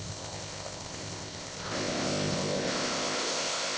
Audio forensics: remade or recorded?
remade